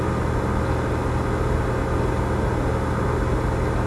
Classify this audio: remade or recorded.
recorded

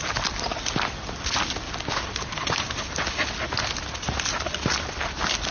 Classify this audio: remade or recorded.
recorded